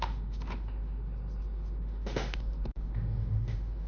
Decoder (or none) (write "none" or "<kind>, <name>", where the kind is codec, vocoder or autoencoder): autoencoder, DAC-VAE